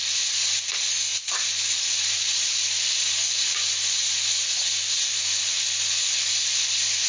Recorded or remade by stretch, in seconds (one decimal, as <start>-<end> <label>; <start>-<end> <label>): 0.0-7.1 recorded